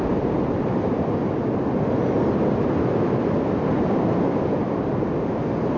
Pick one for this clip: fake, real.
real